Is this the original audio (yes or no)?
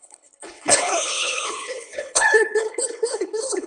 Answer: no